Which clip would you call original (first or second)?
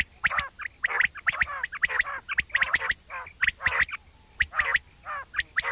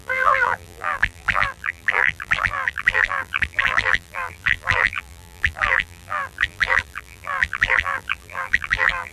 first